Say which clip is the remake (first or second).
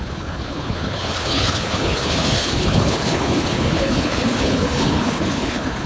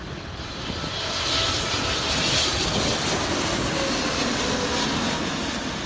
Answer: first